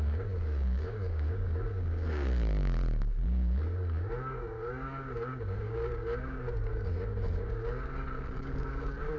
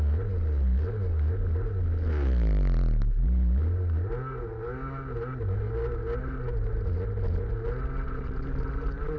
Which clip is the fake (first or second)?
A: first